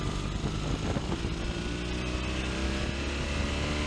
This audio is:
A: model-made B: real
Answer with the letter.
B